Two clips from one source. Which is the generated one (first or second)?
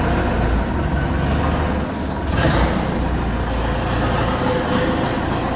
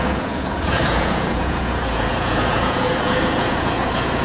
second